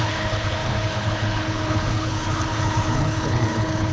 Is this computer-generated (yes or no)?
yes